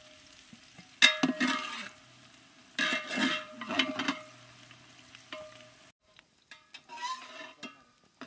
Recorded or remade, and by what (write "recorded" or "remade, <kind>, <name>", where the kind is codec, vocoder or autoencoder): recorded